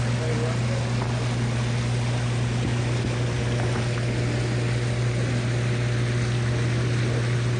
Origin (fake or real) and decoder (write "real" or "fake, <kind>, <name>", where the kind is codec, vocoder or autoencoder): real